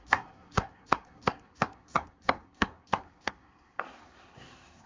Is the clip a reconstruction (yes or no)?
yes